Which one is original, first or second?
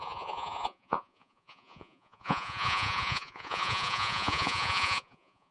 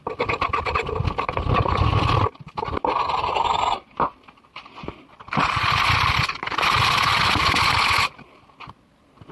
second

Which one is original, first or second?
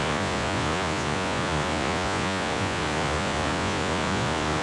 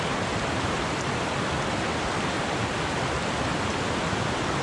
second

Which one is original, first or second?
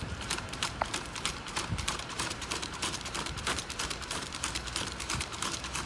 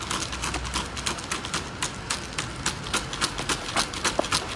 second